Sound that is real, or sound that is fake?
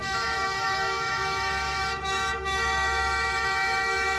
fake